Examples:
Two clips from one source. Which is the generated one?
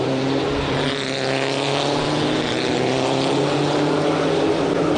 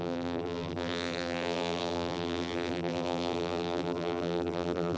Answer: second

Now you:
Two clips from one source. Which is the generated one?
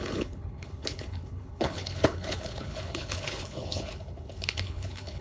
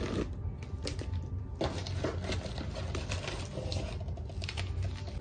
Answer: first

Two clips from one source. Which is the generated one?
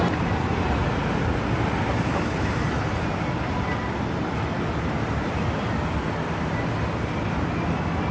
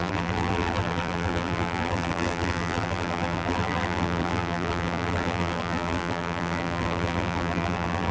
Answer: second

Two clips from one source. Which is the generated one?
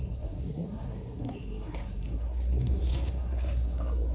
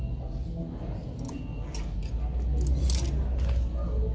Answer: first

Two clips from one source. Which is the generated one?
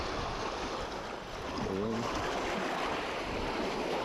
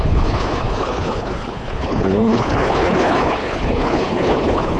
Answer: second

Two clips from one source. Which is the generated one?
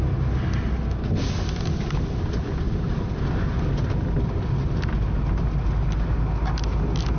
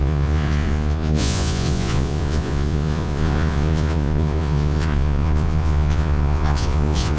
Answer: second